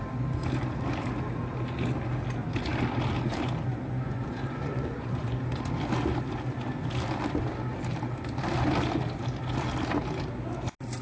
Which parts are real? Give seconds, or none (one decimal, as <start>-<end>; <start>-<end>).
0.0-3.7; 5.4-11.0